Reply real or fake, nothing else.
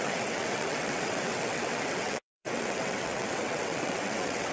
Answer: fake